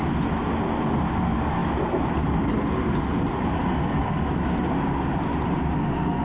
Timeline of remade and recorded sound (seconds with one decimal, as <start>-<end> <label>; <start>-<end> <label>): 0.0-1.6 recorded; 1.6-3.5 remade; 3.5-6.2 recorded